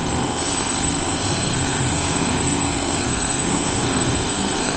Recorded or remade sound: remade